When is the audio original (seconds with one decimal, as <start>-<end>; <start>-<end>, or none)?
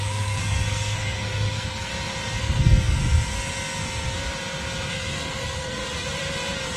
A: 1.9-2.4; 3.0-4.9; 5.8-6.8